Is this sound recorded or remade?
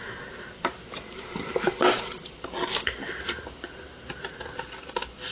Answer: recorded